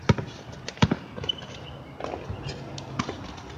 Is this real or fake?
real